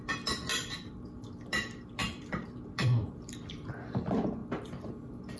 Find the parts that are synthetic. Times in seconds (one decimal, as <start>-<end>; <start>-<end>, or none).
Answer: 0.5-3.7